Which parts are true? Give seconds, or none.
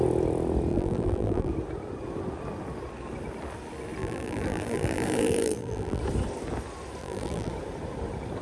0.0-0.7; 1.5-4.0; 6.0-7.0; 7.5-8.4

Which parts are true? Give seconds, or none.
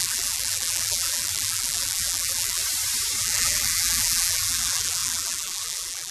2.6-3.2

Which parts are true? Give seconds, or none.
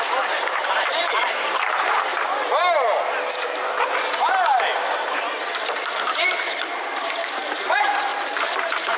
2.1-5.6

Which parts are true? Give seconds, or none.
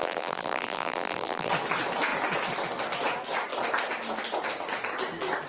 1.5-5.5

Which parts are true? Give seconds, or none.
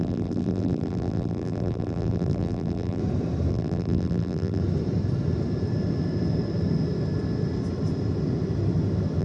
3.0-3.5; 4.6-9.2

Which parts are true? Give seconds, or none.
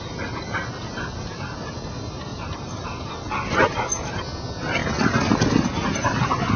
0.0-2.3; 3.1-6.6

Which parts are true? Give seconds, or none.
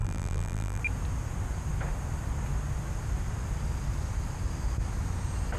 0.8-5.6